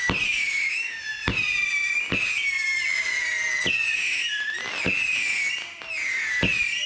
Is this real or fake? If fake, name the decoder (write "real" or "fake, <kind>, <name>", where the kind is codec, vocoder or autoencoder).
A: real